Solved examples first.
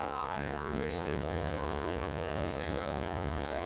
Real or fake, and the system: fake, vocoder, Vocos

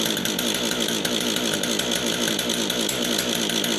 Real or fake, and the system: real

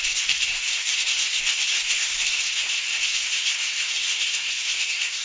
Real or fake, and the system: fake, codec, SNAC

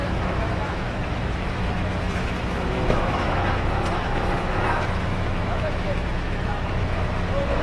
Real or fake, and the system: fake, autoencoder, DAC-VAE